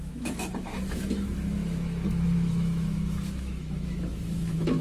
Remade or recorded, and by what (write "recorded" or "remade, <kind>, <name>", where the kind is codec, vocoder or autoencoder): remade, autoencoder, DAC-VAE